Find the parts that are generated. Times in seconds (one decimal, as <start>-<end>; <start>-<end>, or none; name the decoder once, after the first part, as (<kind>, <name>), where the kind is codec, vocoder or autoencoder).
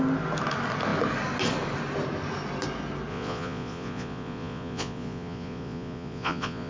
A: 3.1-6.7 (vocoder, Vocos)